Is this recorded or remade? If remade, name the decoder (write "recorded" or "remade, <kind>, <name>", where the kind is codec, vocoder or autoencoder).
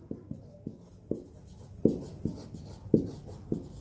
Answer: recorded